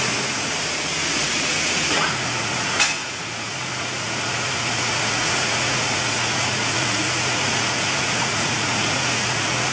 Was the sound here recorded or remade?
remade